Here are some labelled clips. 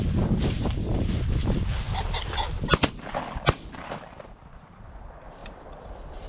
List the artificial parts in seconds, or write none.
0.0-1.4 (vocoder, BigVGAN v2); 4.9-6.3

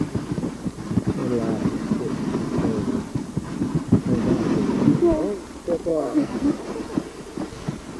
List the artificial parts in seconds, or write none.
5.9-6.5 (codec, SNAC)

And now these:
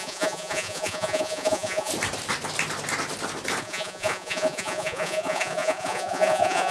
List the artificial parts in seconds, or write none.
0.0-1.9 (vocoder, Vocos); 3.6-6.7

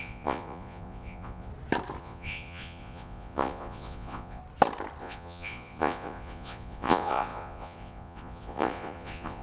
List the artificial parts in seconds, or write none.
0.0-1.5 (vocoder, Vocos); 2.0-4.4; 5.0-9.4